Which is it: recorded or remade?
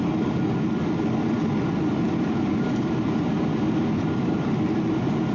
recorded